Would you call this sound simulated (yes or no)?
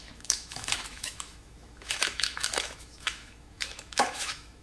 yes